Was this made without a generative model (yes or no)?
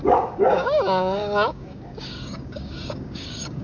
no